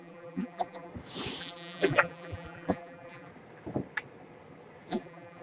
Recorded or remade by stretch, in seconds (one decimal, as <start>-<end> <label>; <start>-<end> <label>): 0.0-0.9 remade; 0.9-1.4 recorded; 1.4-3.3 remade; 3.3-4.9 recorded; 4.9-5.4 remade